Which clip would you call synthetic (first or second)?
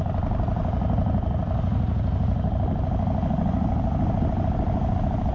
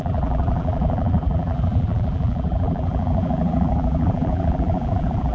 second